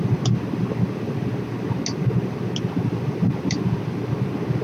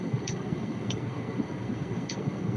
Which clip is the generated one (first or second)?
second